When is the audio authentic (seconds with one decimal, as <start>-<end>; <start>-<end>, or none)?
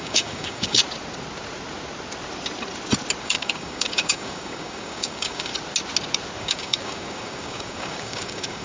0.8-3.2; 5.5-6.4